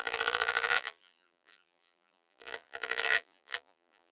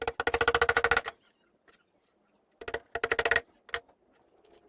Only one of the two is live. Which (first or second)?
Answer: second